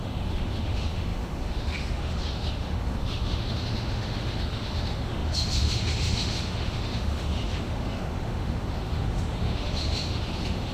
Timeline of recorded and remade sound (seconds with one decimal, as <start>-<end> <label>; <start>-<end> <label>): 0.0-10.7 remade